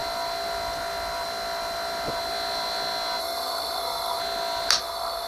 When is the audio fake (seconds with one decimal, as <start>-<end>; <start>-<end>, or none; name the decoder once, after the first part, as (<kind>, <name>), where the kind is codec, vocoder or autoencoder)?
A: 3.2-4.2 (codec, SNAC); 4.8-5.3